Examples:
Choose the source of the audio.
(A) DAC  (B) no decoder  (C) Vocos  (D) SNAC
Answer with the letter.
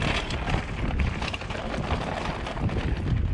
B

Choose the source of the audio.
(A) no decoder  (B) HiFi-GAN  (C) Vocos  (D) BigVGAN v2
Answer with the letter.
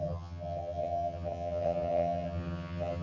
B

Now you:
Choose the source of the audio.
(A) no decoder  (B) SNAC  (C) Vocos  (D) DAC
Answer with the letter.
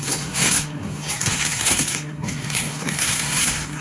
B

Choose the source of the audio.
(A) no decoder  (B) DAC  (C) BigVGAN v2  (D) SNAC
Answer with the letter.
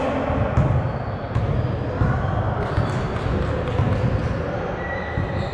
A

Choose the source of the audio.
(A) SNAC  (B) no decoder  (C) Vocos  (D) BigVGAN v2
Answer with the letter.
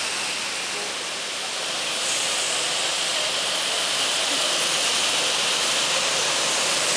B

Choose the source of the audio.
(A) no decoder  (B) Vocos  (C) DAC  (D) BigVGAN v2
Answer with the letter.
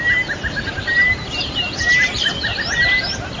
A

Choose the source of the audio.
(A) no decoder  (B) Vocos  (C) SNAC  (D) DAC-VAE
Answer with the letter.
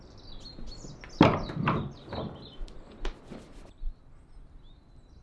A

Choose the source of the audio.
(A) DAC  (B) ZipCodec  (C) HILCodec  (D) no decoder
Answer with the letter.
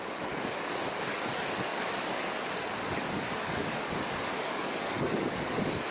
A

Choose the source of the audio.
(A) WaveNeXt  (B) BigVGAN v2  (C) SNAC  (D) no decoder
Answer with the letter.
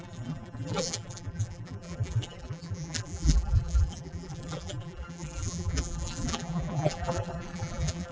B